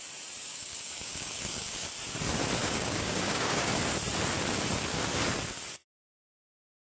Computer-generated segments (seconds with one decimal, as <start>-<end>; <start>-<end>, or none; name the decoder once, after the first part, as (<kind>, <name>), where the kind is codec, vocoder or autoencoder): 0.4-1.9 (codec, DAC); 2.6-3.7